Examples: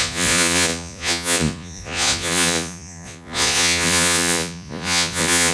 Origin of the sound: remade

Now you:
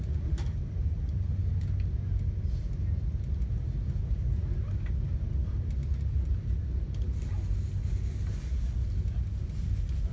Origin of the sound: recorded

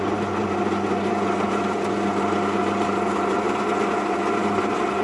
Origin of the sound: recorded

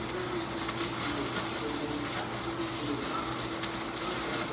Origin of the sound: recorded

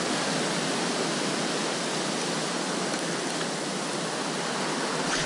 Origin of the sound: recorded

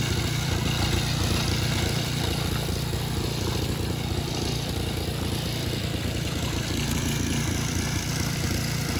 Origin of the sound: remade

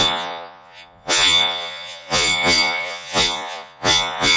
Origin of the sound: remade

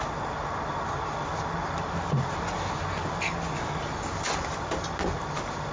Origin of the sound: recorded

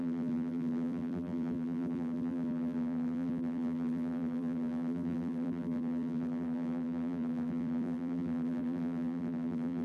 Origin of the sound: remade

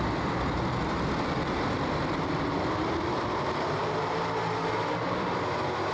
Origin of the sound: remade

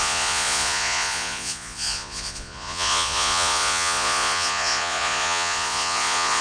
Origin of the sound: remade